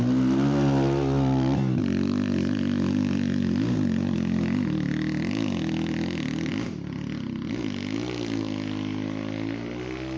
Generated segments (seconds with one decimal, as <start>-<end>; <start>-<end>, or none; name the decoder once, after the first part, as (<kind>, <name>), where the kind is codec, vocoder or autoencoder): none